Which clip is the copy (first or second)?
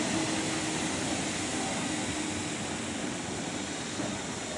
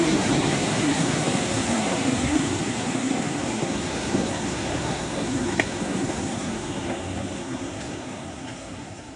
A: second